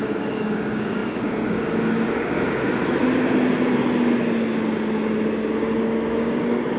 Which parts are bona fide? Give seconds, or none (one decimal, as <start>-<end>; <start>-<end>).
2.8-5.6